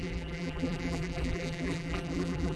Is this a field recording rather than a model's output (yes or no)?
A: no